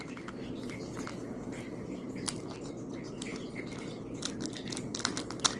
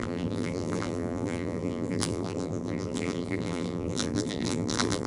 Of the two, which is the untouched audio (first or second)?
first